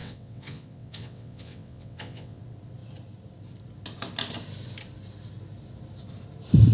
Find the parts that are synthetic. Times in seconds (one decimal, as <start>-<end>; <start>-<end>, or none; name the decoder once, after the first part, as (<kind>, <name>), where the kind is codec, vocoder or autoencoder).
0.0-2.4 (vocoder, WaveNeXt)